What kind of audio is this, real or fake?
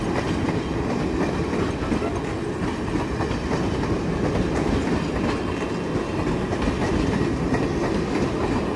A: real